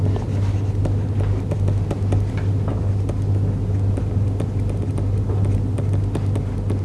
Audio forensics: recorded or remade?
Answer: recorded